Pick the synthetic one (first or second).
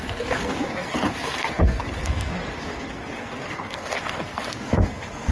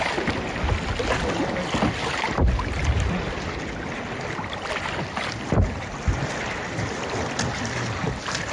first